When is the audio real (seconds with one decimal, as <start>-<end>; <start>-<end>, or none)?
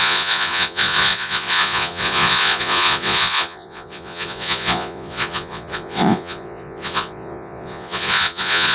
none